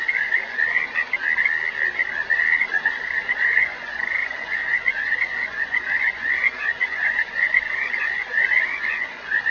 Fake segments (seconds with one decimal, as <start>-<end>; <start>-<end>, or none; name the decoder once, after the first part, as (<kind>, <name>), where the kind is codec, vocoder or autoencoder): 0.0-0.6 (vocoder, Vocos); 3.1-9.5